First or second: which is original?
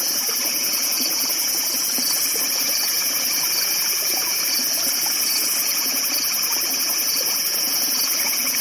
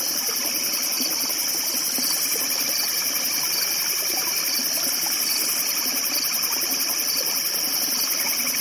second